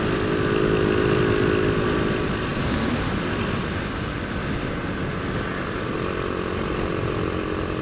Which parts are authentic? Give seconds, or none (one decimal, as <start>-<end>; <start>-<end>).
0.0-7.8